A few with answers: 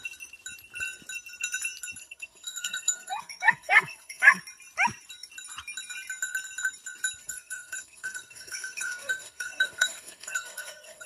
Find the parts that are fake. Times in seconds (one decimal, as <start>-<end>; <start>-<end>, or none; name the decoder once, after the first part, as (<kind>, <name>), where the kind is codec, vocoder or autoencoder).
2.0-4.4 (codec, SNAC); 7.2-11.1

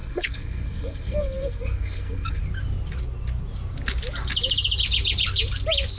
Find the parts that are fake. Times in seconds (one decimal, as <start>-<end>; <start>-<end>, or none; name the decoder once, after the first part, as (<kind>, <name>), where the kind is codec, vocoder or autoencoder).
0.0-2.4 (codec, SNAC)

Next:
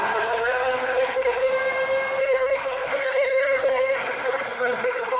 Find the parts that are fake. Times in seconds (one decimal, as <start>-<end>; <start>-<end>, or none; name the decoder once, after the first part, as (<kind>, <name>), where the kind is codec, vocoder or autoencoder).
0.0-1.5 (codec, SNAC); 2.2-5.2